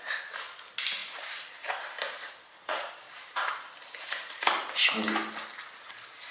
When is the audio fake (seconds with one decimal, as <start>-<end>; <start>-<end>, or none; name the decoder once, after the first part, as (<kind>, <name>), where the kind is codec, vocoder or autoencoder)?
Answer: 1.0-4.4 (vocoder, BigVGAN v2)